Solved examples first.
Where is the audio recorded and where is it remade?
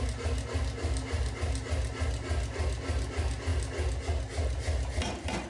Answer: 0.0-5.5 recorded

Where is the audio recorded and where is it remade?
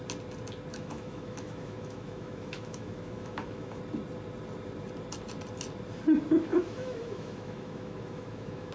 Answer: 0.0-0.7 recorded; 0.7-3.8 remade; 3.8-6.5 recorded; 6.5-8.7 remade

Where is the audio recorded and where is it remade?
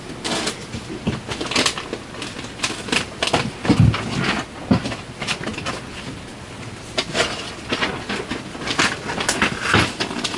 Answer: 0.0-10.4 recorded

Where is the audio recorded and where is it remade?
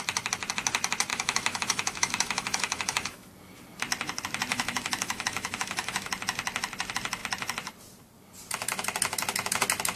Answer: 0.0-1.1 recorded; 1.1-3.3 remade; 3.3-4.5 recorded; 4.5-6.1 remade; 6.1-10.0 recorded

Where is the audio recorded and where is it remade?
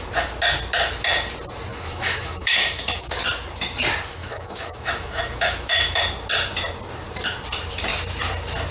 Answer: 0.0-1.7 recorded; 1.7-3.2 remade; 3.2-4.2 recorded; 4.2-6.0 remade; 6.0-8.7 recorded